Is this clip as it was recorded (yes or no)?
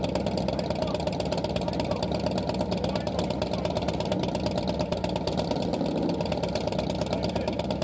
yes